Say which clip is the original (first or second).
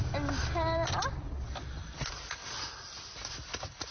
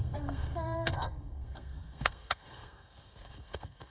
first